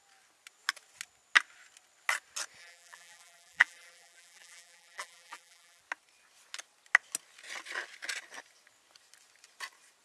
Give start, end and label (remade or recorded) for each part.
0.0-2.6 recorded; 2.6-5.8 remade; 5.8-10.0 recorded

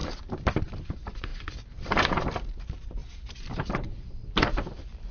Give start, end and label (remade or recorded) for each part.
0.0-5.1 remade